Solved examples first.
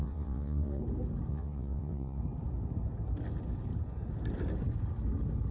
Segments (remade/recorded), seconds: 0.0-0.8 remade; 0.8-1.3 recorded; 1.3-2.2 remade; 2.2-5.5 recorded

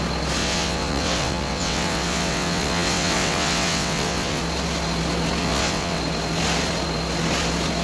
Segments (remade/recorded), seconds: 0.0-0.4 recorded; 0.4-4.4 remade; 4.4-5.4 recorded; 5.4-6.0 remade; 6.0-7.8 recorded

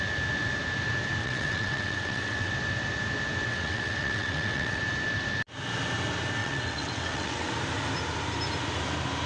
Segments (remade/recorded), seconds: 0.0-1.2 recorded; 1.2-2.5 remade; 2.5-3.5 recorded; 3.5-4.8 remade; 4.8-6.4 recorded; 6.4-7.5 remade; 7.5-9.3 recorded